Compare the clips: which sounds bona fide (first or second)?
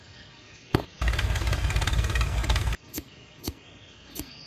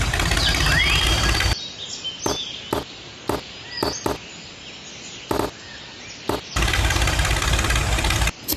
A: second